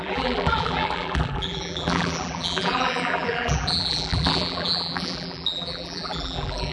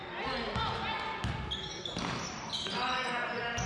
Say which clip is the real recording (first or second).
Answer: second